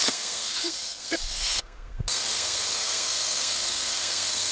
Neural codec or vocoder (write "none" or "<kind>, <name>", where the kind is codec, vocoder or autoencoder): codec, SNAC